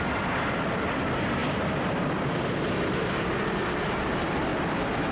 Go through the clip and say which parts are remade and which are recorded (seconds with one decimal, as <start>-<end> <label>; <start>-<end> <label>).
0.0-5.1 recorded